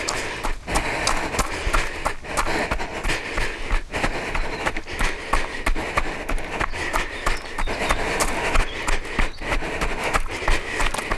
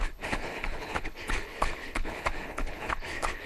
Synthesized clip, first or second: second